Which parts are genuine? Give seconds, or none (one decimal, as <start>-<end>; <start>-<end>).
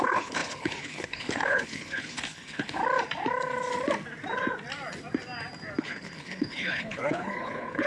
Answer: 2.8-5.8